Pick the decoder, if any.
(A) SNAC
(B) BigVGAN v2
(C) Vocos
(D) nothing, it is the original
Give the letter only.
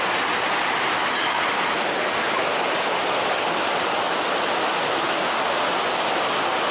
D